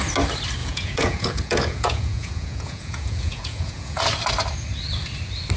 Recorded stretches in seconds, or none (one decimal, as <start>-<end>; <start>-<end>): 0.0-0.6; 4.0-5.6